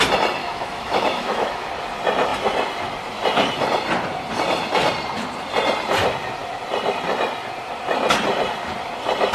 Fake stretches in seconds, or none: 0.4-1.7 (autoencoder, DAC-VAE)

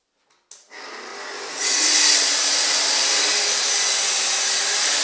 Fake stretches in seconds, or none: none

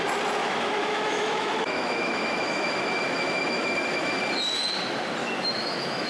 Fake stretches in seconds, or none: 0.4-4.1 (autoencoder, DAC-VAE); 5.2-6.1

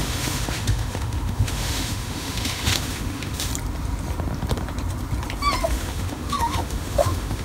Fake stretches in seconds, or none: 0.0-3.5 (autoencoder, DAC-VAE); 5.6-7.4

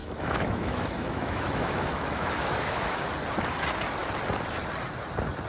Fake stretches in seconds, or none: 0.0-3.1 (autoencoder, DAC-VAE)

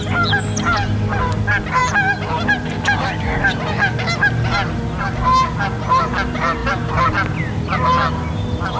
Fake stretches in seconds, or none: none